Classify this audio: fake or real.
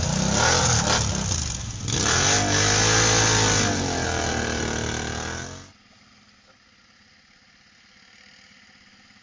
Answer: real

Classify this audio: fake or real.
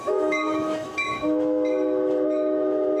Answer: fake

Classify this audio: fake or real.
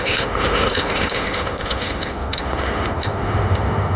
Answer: fake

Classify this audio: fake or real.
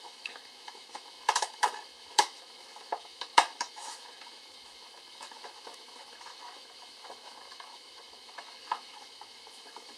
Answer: fake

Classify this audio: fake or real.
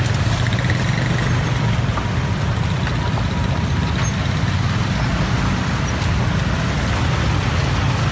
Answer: real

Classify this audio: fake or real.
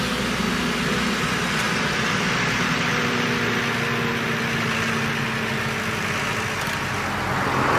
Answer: real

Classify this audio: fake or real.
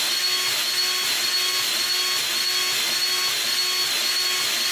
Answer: real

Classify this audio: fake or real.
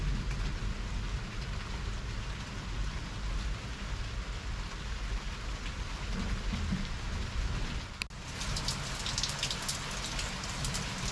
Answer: real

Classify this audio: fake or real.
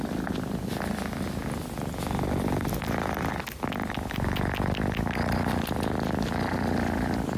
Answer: real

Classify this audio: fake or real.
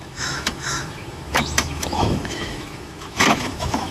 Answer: fake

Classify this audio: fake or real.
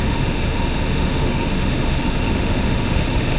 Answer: fake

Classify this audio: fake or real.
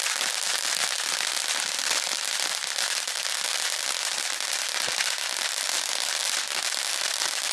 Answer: real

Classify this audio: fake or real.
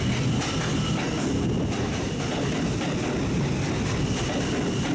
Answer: real